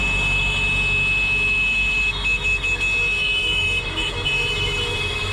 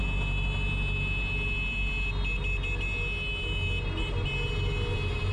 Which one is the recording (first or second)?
second